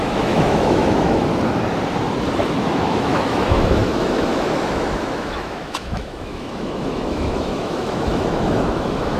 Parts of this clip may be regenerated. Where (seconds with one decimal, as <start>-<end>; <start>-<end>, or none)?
0.0-1.3; 2.5-9.2